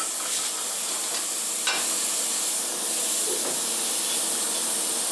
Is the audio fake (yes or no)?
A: no